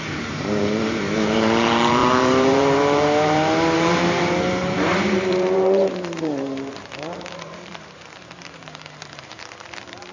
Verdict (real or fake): fake